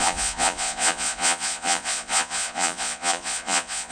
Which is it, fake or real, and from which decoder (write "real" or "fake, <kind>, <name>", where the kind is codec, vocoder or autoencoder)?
fake, vocoder, Vocos